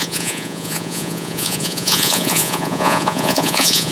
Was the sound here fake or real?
fake